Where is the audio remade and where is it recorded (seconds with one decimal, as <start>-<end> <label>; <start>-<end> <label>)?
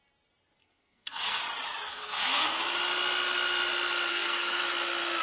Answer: 0.0-0.6 recorded; 0.6-1.4 remade; 1.4-1.9 recorded; 1.9-2.6 remade; 2.6-4.1 recorded; 4.1-4.6 remade; 4.6-5.2 recorded